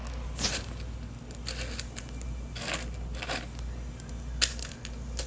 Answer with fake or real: real